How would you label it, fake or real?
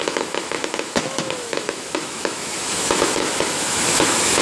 fake